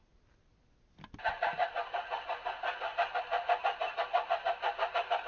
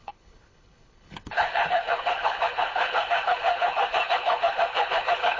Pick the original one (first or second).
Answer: first